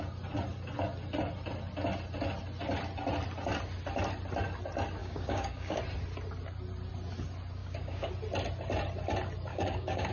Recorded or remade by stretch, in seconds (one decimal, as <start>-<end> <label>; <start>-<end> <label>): 0.0-5.0 recorded; 5.0-5.8 remade; 5.8-7.6 recorded; 7.6-8.1 remade; 8.1-9.5 recorded; 9.5-10.1 remade